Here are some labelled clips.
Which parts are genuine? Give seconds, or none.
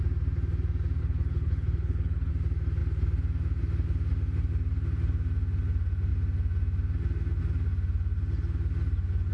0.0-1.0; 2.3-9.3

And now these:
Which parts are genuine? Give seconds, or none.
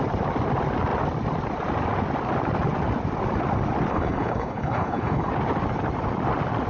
0.0-3.9; 5.3-6.7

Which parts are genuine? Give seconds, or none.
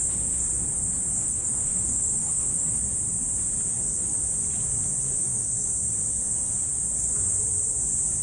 0.0-1.2; 2.8-3.7; 4.3-5.1; 5.7-8.2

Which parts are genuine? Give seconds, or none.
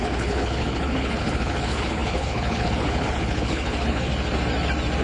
4.1-5.0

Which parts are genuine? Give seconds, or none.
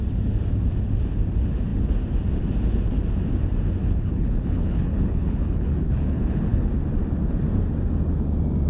0.0-3.8; 6.7-8.7